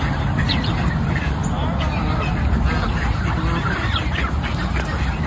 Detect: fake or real real